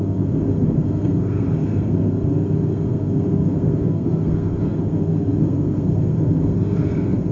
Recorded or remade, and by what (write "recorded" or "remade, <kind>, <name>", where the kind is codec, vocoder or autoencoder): remade, codec, SNAC